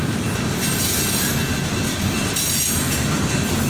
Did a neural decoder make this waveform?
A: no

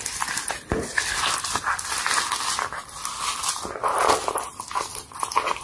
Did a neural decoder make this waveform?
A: no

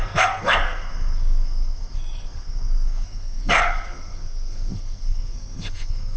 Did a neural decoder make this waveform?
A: yes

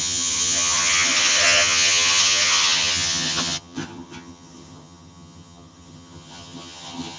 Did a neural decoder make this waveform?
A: yes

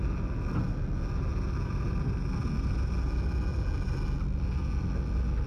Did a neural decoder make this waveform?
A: no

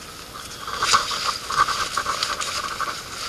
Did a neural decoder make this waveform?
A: no